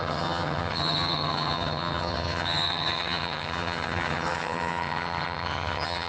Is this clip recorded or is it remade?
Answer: remade